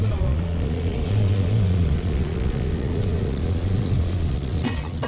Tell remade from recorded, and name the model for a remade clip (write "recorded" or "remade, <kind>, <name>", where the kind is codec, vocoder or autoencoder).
remade, vocoder, Vocos